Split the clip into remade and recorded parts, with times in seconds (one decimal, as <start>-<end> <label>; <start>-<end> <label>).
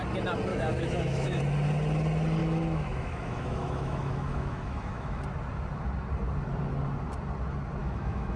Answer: 0.0-0.5 recorded; 0.5-1.4 remade; 1.4-2.4 recorded; 2.4-5.2 remade; 5.2-7.8 recorded; 7.8-8.4 remade